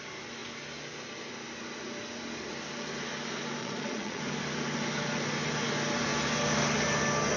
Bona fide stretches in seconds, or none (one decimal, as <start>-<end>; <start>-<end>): 0.0-3.6; 4.2-7.4